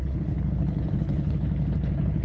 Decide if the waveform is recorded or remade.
remade